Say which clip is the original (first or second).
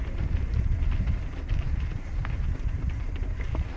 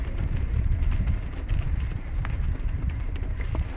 first